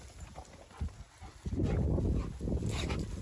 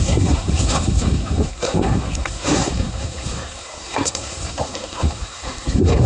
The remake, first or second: second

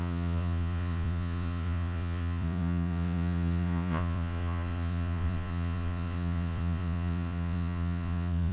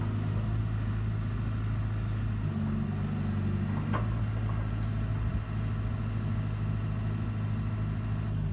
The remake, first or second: first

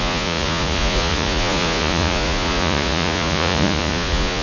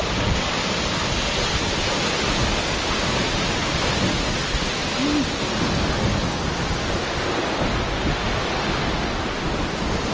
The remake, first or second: first